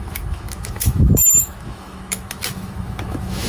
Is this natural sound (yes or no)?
no